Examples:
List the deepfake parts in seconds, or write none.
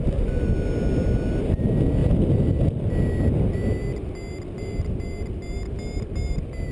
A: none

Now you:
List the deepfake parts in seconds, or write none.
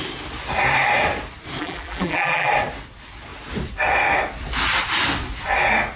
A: 1.6-2.5 (vocoder, BigVGAN v2)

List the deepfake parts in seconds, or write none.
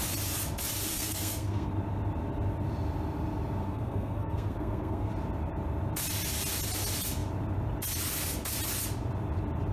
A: 0.9-1.7 (codec, SNAC); 3.6-5.1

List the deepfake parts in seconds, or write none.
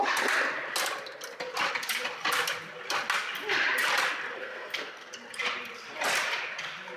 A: 4.4-5.1 (codec, SNAC)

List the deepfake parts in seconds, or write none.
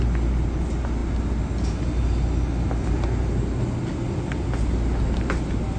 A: none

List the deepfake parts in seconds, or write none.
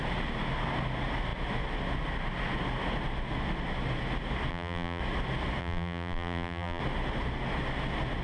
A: 4.5-5.0 (vocoder, BigVGAN v2); 5.6-6.8